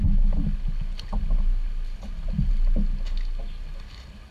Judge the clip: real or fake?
real